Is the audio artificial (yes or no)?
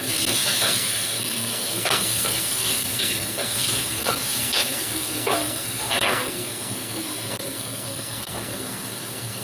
yes